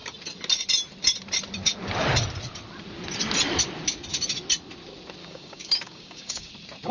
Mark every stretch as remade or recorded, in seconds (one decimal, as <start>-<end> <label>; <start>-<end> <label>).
0.0-5.2 recorded; 5.2-6.5 remade; 6.5-6.9 recorded